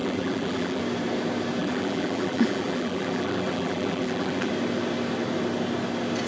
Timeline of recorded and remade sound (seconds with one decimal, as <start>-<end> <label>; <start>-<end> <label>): 0.0-0.8 remade; 0.8-1.6 recorded; 1.6-4.5 remade; 4.5-6.3 recorded